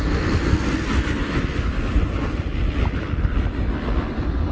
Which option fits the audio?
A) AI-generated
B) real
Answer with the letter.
B